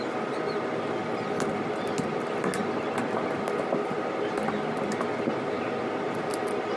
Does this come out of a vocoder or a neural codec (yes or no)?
no